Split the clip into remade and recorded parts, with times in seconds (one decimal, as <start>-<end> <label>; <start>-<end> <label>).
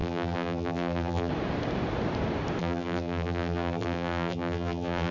0.0-1.3 remade; 1.3-2.6 recorded; 2.6-5.1 remade